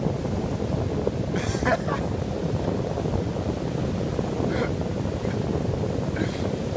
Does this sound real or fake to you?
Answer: real